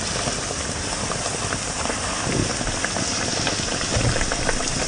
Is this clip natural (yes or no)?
no